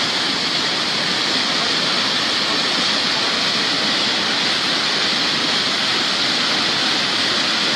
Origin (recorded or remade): recorded